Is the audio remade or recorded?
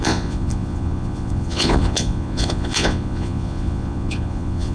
remade